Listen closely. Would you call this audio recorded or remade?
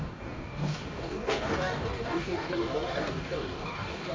remade